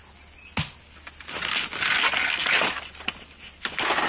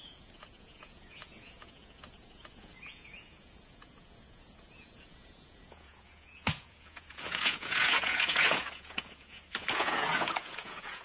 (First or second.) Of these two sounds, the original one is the first